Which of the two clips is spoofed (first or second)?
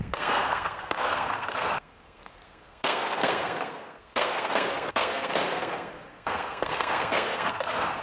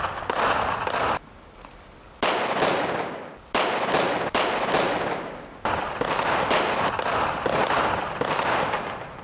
first